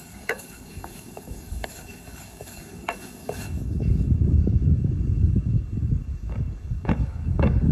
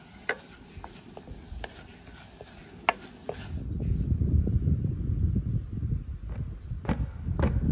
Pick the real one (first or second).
second